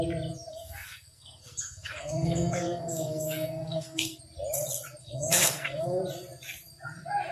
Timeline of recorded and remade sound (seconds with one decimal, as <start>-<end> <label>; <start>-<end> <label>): 0.0-0.5 recorded; 0.5-4.2 remade; 4.2-5.0 recorded; 5.0-6.0 remade; 6.0-7.3 recorded